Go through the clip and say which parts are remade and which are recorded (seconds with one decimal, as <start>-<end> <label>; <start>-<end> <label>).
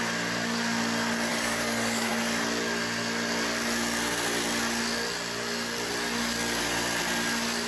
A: 0.0-1.3 recorded; 1.3-2.1 remade; 2.1-7.7 recorded